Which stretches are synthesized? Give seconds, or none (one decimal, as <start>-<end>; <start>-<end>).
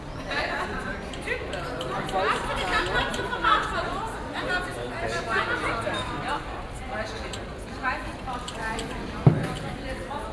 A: none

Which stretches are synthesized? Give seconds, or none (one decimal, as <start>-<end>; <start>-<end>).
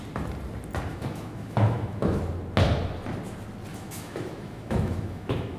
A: 0.9-2.2; 3.7-5.6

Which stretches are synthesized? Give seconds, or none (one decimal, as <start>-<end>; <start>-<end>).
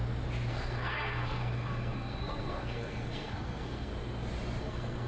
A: 0.5-3.9; 4.6-5.1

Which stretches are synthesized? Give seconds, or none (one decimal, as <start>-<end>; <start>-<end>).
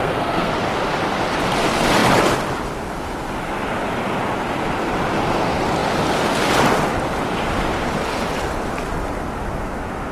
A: 0.0-0.5